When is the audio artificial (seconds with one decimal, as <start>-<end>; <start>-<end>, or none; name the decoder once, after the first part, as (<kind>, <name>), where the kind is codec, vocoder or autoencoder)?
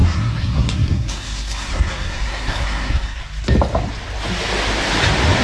0.0-3.2 (codec, SNAC)